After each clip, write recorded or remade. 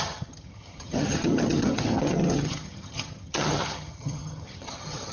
remade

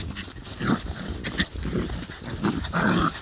recorded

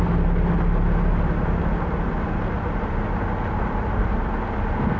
recorded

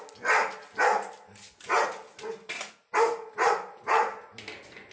recorded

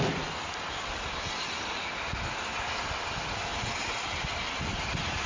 recorded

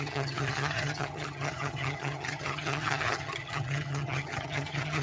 remade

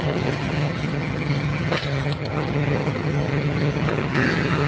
remade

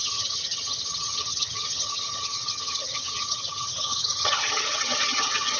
remade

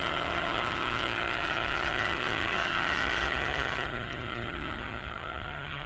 remade